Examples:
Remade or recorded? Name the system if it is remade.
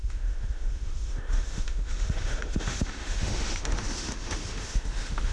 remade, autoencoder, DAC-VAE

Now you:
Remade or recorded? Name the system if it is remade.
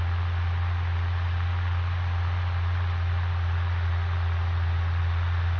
recorded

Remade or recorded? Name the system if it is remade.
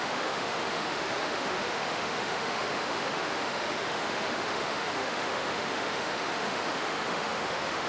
remade, autoencoder, DAC-VAE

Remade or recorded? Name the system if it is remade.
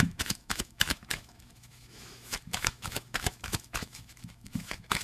remade, autoencoder, DAC-VAE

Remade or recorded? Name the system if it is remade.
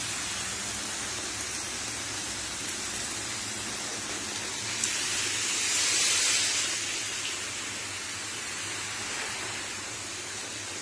recorded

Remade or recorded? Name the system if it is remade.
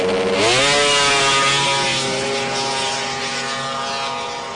recorded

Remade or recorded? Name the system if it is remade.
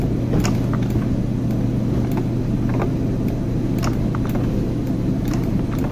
recorded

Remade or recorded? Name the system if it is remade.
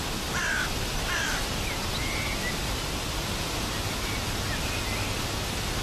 recorded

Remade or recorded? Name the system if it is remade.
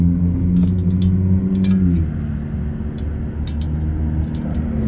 recorded